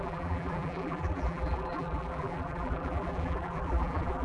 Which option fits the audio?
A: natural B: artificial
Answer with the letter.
B